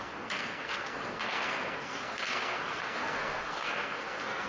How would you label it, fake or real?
fake